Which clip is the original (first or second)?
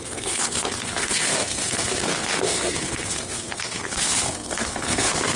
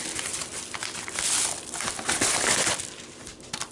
second